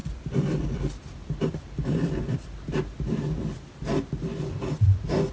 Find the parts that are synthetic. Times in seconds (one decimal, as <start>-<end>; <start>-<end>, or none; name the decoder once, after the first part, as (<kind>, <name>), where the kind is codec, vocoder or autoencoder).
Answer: 0.0-3.2 (vocoder, BigVGAN v2)